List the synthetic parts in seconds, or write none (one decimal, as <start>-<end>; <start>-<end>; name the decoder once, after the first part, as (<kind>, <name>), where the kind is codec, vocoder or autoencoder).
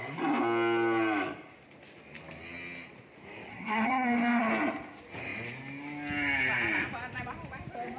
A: 3.5-4.5 (codec, SNAC)